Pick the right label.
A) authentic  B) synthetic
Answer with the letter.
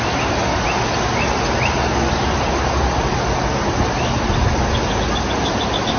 A